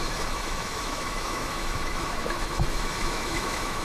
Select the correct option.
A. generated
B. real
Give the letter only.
A